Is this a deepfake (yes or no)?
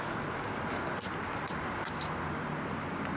no